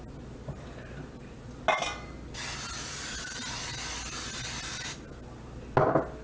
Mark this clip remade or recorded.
recorded